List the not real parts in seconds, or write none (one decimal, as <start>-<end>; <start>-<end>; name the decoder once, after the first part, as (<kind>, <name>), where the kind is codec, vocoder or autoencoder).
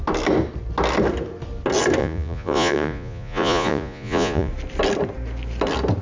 2.0-4.5 (vocoder, Vocos)